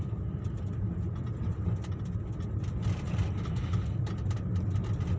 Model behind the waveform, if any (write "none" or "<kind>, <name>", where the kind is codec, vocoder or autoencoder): none